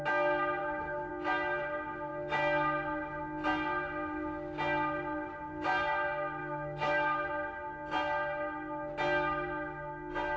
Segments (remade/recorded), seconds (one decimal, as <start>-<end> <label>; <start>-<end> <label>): 0.0-0.6 recorded; 0.6-1.1 remade; 1.1-6.4 recorded; 6.4-7.3 remade; 7.3-10.4 recorded